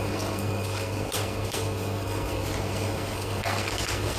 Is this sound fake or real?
fake